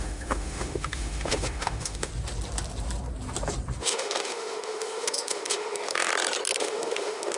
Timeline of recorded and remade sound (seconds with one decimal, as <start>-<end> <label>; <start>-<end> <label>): 0.0-2.1 remade; 2.1-3.8 recorded; 3.8-6.1 remade; 6.1-6.6 recorded; 6.6-7.4 remade